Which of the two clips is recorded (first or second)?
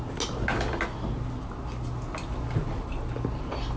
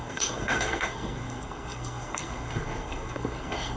first